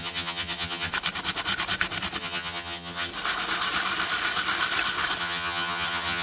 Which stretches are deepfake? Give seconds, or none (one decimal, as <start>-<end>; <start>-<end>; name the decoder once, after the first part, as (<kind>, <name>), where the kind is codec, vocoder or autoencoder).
0.0-0.9 (vocoder, HiFi-GAN); 2.2-3.1; 5.2-6.2